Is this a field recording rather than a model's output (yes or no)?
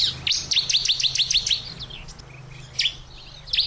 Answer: yes